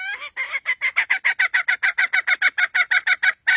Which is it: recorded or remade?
recorded